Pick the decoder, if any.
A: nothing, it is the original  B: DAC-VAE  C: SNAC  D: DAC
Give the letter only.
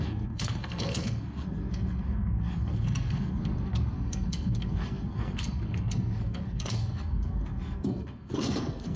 C